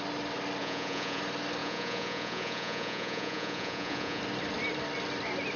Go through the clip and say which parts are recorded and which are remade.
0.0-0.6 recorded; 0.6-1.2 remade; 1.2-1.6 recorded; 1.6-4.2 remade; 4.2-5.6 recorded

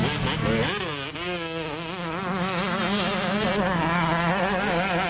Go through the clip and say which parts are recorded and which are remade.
0.0-5.1 recorded

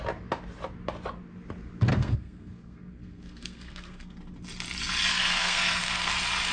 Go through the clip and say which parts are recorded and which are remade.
0.0-1.9 recorded; 1.9-4.2 remade; 4.2-5.1 recorded; 5.1-6.1 remade; 6.1-6.5 recorded

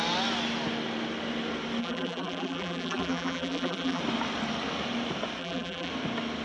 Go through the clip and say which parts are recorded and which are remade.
0.0-1.8 recorded; 1.8-4.0 remade; 4.0-5.4 recorded; 5.4-5.9 remade; 5.9-6.4 recorded

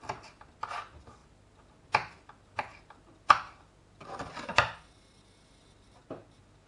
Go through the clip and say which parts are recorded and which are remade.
0.0-6.7 recorded